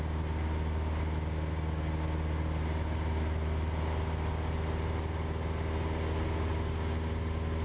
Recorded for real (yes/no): yes